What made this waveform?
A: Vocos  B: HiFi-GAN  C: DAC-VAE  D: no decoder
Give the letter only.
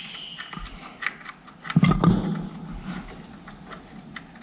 D